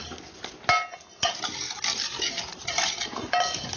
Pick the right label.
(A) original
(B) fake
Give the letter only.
A